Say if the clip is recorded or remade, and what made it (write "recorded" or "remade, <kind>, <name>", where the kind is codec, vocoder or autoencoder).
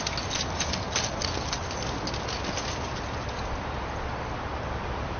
recorded